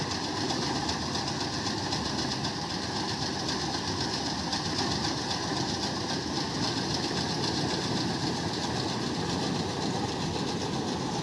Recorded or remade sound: recorded